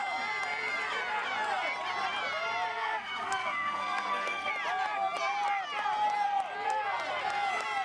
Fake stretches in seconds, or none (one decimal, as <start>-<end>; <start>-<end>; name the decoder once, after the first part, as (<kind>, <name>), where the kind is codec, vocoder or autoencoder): 2.7-4.5 (codec, SNAC)